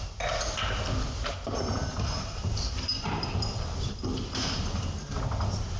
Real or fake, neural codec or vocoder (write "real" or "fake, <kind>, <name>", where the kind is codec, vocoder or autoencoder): real